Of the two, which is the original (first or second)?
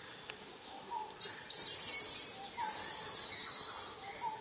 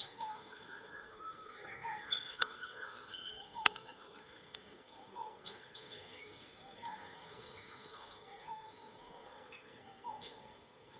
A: first